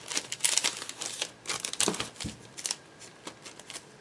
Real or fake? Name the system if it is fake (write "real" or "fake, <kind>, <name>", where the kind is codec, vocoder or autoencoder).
real